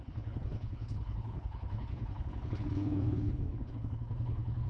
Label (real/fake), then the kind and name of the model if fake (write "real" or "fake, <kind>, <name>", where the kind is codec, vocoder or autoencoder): fake, codec, HILCodec